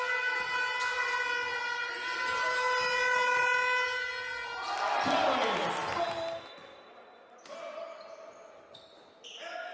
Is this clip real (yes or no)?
yes